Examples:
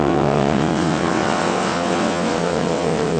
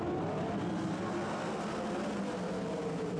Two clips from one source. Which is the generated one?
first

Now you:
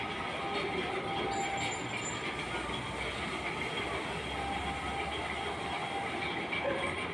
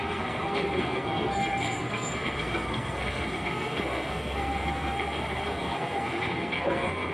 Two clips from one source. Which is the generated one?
second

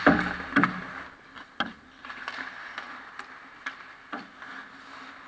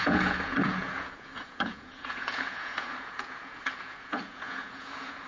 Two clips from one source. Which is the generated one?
second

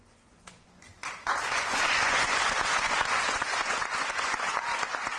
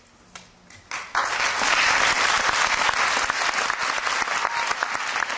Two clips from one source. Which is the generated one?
first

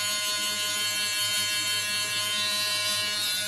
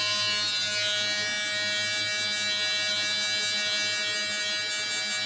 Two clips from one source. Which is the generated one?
first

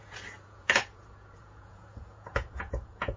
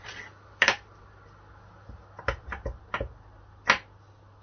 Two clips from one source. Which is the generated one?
first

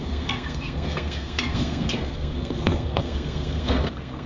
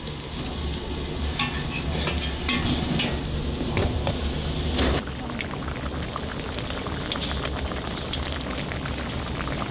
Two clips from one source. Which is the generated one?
first